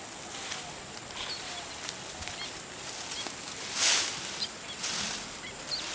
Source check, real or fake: real